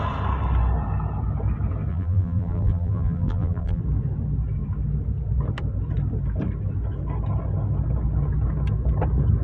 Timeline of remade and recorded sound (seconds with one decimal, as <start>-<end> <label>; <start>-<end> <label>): 0.0-1.9 recorded; 1.9-3.8 remade; 3.8-9.4 recorded